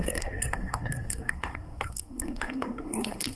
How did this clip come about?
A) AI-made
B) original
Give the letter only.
A